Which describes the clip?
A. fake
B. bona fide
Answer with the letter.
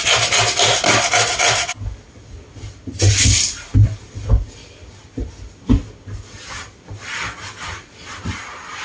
B